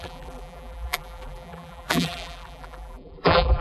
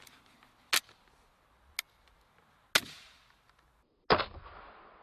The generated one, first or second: first